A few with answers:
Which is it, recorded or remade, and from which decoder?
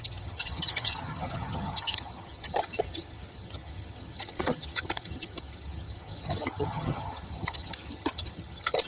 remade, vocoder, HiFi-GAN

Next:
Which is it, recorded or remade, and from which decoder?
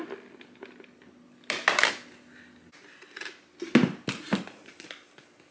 recorded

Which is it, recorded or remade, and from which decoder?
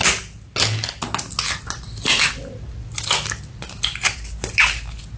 recorded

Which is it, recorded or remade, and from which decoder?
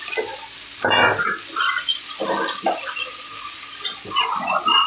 recorded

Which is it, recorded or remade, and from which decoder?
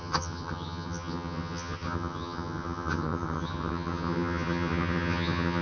remade, vocoder, HiFi-GAN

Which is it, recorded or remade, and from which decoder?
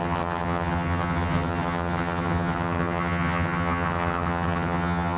remade, vocoder, HiFi-GAN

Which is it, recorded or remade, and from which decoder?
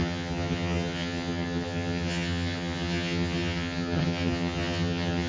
remade, vocoder, HiFi-GAN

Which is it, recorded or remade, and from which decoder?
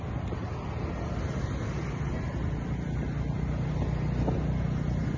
recorded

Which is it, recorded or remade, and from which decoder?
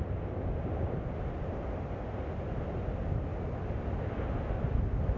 recorded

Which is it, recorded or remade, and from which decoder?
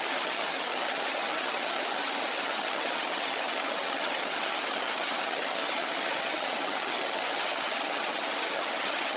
remade, vocoder, HiFi-GAN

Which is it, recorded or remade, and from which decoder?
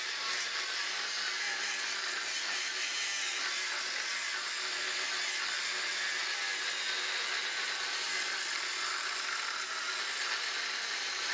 recorded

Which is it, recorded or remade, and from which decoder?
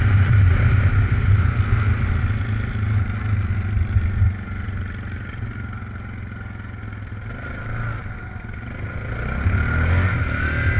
recorded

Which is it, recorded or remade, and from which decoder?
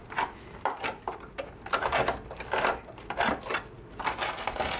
recorded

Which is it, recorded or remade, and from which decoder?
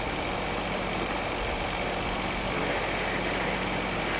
recorded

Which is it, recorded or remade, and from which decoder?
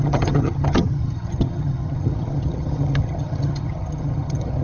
remade, vocoder, HiFi-GAN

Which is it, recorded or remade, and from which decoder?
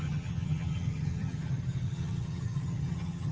remade, vocoder, HiFi-GAN